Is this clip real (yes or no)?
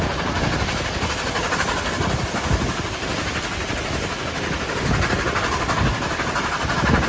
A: yes